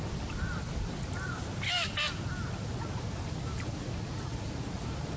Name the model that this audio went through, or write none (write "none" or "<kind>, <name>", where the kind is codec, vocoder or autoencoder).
none